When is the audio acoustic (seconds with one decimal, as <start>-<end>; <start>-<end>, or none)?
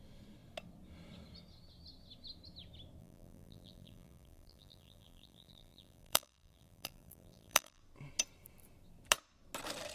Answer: 0.0-3.0; 7.8-9.9